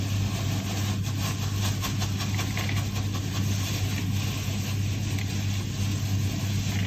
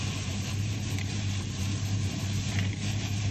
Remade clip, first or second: second